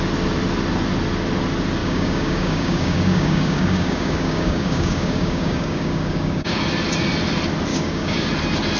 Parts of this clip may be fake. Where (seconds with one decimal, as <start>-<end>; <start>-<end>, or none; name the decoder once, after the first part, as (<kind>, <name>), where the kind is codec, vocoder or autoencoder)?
1.8-6.6 (codec, DAC); 7.7-8.3